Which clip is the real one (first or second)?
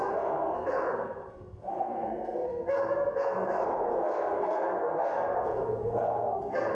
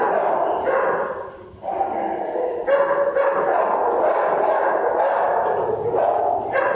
second